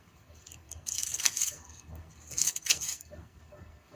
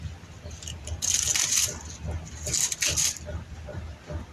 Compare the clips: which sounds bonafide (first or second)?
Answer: second